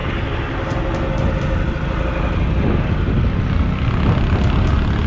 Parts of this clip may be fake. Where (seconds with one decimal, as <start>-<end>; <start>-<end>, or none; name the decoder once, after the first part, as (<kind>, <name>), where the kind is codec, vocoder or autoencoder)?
none